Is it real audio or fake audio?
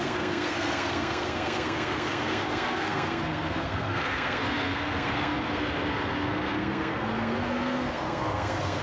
fake